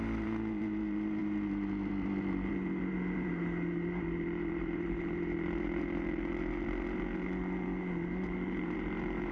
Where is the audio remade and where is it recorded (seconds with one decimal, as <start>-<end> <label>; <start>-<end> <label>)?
0.0-9.3 remade